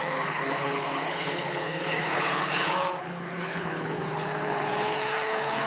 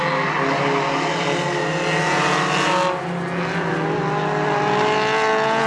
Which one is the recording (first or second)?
second